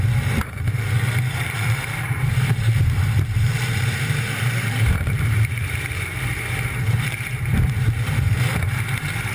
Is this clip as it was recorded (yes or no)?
no